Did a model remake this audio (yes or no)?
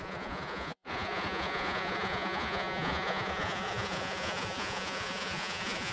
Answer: yes